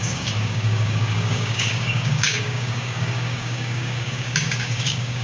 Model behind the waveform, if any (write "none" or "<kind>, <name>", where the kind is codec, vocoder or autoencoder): codec, DAC